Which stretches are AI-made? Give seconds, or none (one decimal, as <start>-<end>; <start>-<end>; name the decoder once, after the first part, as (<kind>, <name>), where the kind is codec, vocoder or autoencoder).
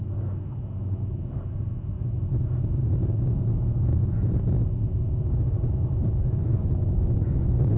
3.9-4.4 (vocoder, Vocos); 6.4-7.8